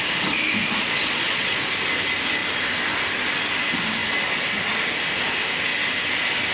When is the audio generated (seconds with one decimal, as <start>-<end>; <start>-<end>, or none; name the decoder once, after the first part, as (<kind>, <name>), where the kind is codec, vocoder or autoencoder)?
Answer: 0.6-1.7 (vocoder, Vocos)